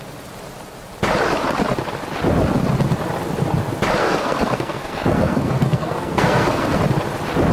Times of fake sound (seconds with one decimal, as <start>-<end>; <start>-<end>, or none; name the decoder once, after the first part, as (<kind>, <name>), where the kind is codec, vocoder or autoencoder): 4.0-6.8 (codec, SNAC)